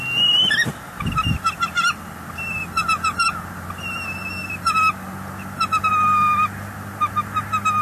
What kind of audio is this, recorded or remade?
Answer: recorded